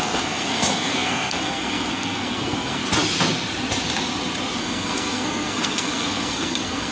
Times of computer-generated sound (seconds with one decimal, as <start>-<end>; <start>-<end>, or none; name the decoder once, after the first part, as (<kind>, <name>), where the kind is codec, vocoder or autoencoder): 0.0-2.8 (codec, SNAC); 4.6-6.9